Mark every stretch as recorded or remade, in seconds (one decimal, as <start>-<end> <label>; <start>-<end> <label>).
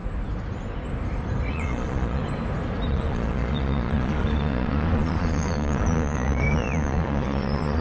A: 0.0-1.5 recorded; 1.5-2.2 remade; 2.2-2.9 recorded; 2.9-7.8 remade